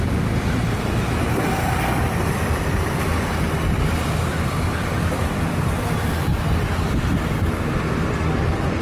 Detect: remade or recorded remade